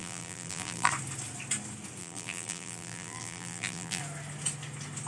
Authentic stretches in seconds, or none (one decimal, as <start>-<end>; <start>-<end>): 0.9-2.0; 4.0-5.1